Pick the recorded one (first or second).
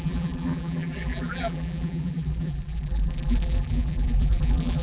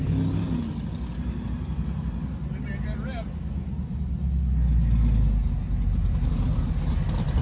second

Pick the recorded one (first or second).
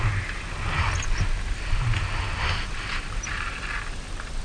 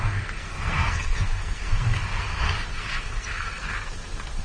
first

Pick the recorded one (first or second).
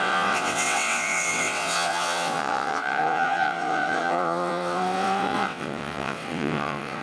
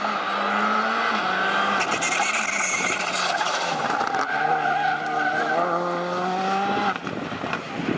second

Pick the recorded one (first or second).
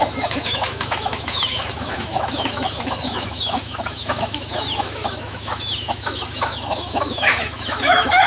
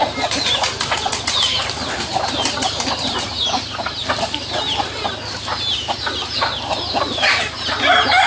second